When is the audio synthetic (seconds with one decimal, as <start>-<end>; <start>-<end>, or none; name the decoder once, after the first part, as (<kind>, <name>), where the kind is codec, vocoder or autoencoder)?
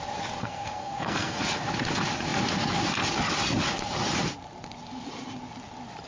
0.4-1.4 (codec, SNAC)